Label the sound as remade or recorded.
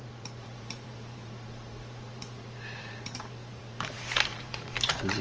remade